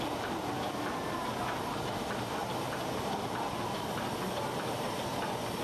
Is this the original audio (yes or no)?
yes